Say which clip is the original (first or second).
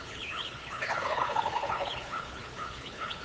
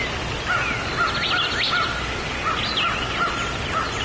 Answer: second